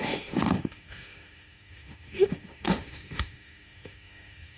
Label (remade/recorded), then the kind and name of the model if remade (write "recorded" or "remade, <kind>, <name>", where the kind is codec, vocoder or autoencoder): remade, autoencoder, DAC-VAE